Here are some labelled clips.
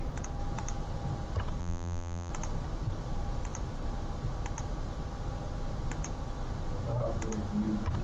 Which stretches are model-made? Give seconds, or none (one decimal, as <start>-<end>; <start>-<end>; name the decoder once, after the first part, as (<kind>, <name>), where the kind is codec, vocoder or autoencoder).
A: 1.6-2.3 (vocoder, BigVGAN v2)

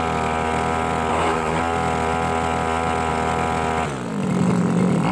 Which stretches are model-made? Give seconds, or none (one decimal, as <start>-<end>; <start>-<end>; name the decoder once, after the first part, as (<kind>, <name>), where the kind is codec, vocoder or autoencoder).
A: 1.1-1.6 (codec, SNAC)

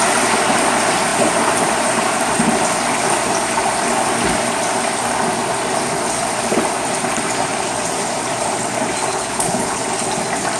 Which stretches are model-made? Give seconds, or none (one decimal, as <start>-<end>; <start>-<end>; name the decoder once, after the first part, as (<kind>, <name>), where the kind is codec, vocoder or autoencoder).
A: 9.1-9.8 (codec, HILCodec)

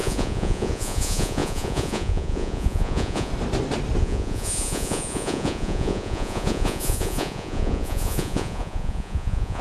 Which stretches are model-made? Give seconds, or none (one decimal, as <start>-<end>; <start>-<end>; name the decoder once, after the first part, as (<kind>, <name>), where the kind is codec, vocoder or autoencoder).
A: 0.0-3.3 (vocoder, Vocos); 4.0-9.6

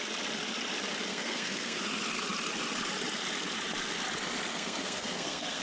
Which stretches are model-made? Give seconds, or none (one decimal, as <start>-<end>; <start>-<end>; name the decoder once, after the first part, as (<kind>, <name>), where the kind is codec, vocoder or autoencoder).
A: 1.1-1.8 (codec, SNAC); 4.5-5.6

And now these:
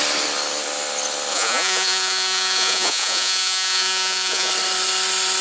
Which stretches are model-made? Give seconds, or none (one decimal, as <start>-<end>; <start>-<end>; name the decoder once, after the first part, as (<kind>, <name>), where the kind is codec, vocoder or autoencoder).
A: 1.3-4.5 (vocoder, Vocos)